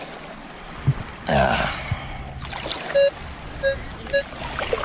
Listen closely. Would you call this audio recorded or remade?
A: recorded